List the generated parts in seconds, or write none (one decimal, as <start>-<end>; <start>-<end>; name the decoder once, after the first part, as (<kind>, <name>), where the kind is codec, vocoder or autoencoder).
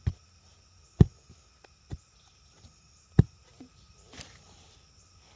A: none